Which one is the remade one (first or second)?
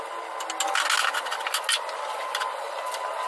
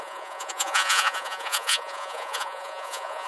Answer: second